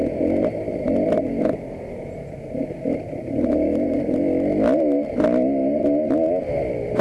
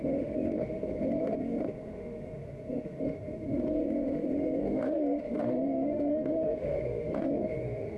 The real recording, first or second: first